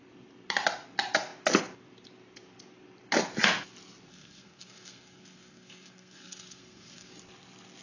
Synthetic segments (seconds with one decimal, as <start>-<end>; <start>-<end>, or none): 4.1-7.1